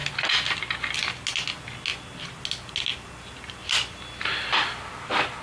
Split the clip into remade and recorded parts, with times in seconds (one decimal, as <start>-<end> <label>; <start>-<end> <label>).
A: 0.0-5.4 recorded